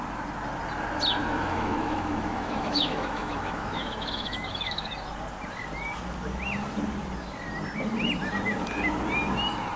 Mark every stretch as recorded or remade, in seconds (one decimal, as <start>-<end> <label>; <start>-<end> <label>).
0.0-1.2 recorded; 1.2-4.9 remade; 4.9-9.8 recorded